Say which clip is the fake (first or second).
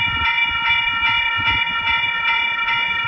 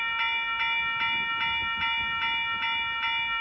first